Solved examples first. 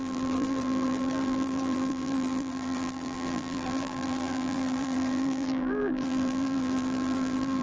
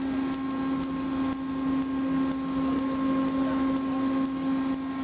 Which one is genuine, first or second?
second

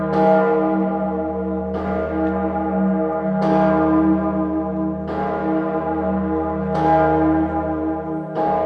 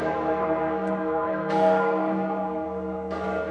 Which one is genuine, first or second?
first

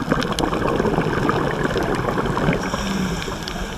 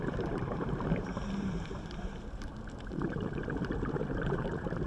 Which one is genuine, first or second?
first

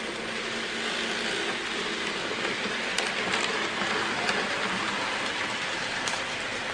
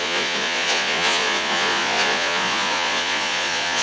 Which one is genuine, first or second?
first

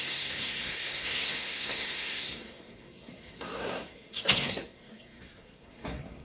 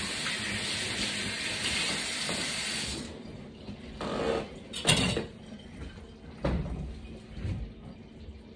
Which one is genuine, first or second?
second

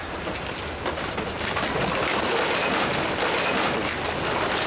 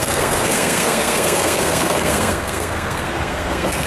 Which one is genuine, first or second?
first